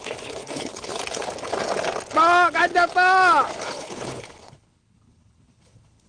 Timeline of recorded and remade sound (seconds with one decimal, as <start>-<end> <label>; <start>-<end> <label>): 0.0-0.9 remade; 0.9-3.6 recorded; 3.6-6.1 remade